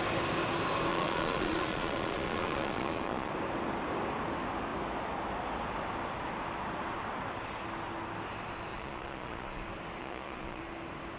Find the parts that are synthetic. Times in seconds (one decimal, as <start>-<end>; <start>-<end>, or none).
0.9-3.3; 8.7-9.6; 10.0-10.6